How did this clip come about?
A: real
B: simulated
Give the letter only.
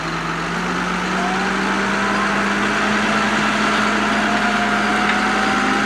A